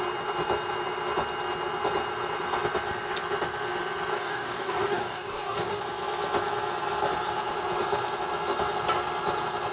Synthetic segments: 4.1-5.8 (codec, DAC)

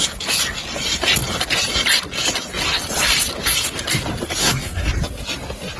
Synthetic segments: 4.4-4.9 (codec, SNAC)

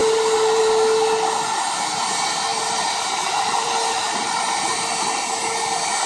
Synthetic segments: 0.0-0.6 (vocoder, BigVGAN v2); 2.5-4.4

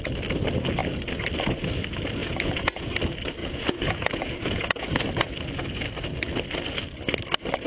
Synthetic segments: 2.2-2.9 (vocoder, Vocos); 3.4-5.2

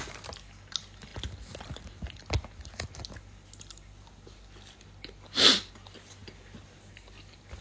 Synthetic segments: none

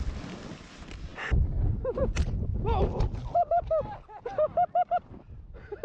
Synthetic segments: none

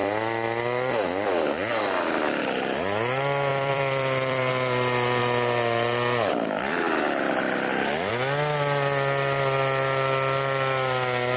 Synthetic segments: 3.5-4.5 (vocoder, BigVGAN v2)

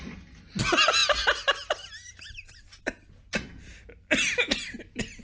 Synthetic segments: none